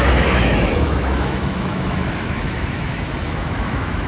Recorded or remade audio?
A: remade